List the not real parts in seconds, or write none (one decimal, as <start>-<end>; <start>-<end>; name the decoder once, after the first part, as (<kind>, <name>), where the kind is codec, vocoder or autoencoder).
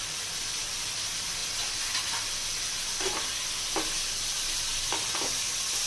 none